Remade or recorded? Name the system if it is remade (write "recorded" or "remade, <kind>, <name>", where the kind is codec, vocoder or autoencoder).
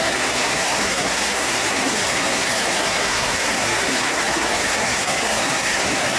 remade, codec, SNAC